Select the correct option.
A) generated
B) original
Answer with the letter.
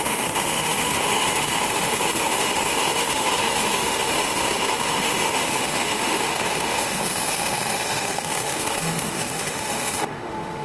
A